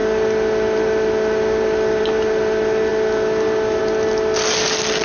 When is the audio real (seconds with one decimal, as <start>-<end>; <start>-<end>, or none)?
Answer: 0.0-5.0

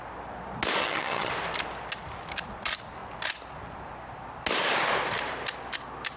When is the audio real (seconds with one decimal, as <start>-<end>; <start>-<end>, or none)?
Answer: 0.0-0.8; 1.3-6.2